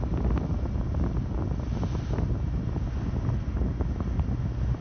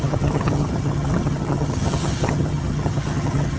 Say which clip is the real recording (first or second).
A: first